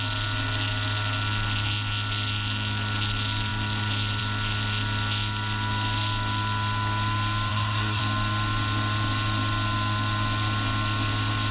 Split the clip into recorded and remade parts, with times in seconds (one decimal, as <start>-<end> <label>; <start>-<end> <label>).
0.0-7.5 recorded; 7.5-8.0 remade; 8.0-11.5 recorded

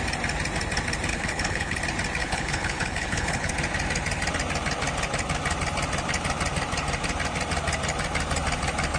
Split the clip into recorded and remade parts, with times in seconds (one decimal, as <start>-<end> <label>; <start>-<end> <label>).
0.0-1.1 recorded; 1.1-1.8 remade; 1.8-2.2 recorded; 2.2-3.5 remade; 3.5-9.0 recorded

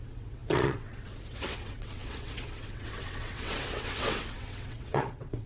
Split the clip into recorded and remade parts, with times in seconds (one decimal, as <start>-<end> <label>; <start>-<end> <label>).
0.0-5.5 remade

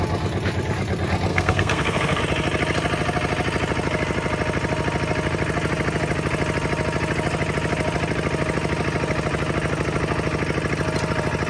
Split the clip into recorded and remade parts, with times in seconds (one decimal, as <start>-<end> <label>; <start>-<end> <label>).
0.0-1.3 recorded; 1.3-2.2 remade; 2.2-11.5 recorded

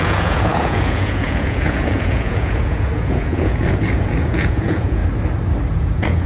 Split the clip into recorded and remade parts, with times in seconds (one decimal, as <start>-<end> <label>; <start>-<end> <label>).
0.0-5.0 remade; 5.0-5.7 recorded; 5.7-6.3 remade

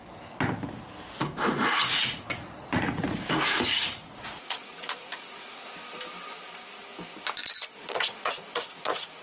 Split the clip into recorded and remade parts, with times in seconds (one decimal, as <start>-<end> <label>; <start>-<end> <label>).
0.0-1.2 recorded; 1.2-5.7 remade; 5.7-7.4 recorded; 7.4-9.2 remade

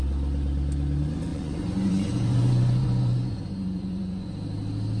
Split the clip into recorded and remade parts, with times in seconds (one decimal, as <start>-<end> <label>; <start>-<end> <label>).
0.0-1.3 recorded; 1.3-4.3 remade; 4.3-5.0 recorded